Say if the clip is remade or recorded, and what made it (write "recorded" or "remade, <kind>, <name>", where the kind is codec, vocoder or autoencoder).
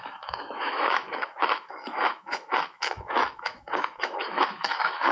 remade, autoencoder, DAC-VAE